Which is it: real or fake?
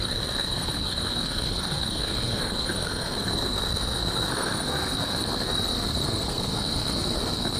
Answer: fake